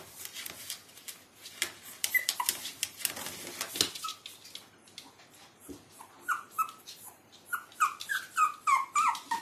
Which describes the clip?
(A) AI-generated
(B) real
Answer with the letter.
B